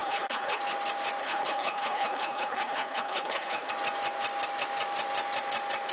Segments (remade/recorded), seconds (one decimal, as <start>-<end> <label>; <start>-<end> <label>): 0.0-0.6 remade; 0.6-1.2 recorded; 1.2-3.7 remade; 3.7-5.9 recorded